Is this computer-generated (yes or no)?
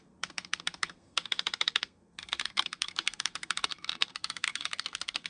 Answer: yes